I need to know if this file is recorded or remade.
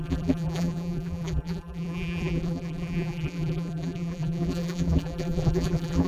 remade